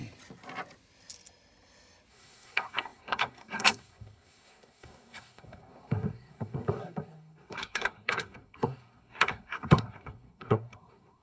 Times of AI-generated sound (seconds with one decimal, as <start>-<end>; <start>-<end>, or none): 2.1-11.2